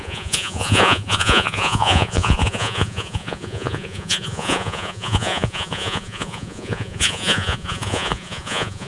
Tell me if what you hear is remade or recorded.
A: remade